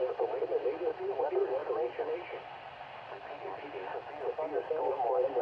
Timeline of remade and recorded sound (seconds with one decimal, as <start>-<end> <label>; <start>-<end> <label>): 0.0-1.6 remade; 1.6-4.8 recorded; 4.8-5.4 remade